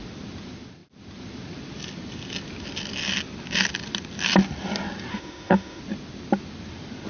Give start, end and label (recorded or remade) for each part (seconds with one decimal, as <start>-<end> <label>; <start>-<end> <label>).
0.0-5.1 recorded; 5.1-5.8 remade; 5.8-7.1 recorded